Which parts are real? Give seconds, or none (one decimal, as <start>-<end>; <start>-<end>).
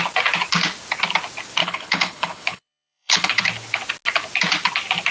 0.0-1.6; 3.4-5.1